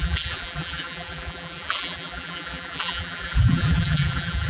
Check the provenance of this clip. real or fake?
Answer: fake